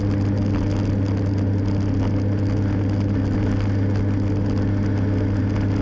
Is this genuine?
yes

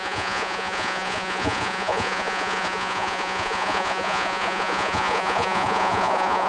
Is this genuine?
no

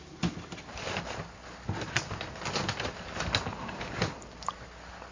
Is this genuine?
yes